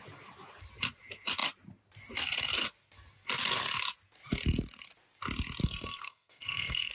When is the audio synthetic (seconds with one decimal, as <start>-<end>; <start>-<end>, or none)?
5.6-6.9